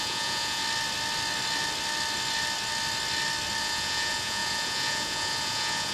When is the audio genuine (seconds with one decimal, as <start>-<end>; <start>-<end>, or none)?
0.6-3.6